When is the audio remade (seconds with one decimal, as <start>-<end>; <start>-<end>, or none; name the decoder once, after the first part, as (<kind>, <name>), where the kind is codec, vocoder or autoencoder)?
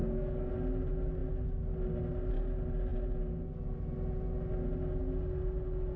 0.0-0.5 (codec, SNAC)